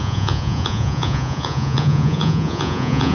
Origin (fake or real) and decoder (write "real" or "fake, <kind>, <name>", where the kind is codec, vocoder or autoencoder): fake, vocoder, Vocos